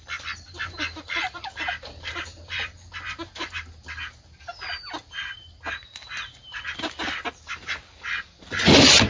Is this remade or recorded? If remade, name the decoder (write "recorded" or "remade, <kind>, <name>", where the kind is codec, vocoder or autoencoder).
recorded